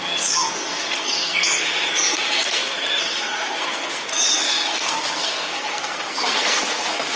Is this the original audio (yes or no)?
no